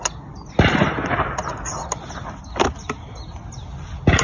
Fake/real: real